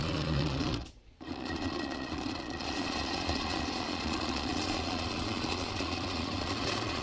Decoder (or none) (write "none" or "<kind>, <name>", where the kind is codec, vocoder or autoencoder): vocoder, Vocos